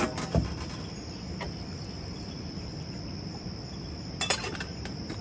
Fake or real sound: real